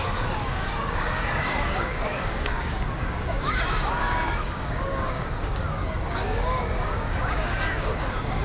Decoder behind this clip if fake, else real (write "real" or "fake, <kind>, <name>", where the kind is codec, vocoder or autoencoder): fake, codec, DAC